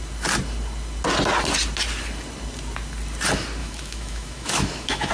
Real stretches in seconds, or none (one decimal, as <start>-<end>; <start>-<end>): 0.0-3.6